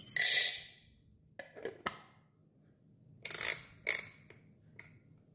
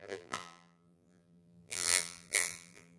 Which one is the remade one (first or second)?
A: second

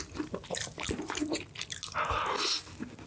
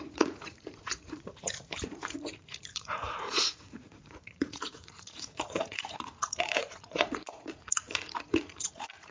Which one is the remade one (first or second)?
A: second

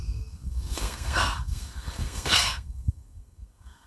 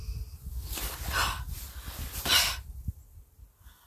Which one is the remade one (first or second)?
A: first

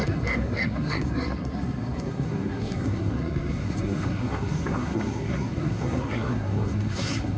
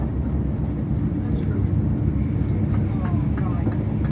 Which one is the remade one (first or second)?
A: first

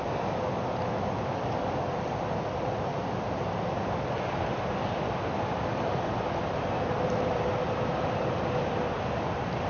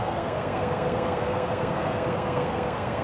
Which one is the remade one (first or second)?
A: second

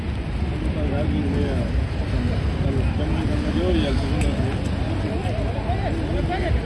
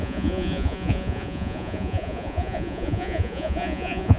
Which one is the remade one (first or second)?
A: second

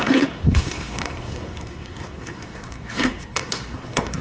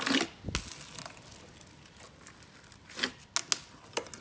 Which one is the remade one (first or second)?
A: first